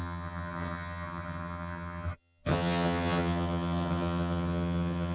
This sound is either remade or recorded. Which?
remade